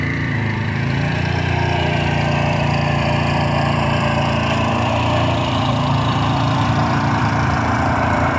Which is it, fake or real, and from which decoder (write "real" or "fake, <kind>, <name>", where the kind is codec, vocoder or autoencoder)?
fake, vocoder, BigVGAN v2